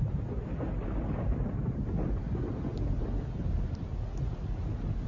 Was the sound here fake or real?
real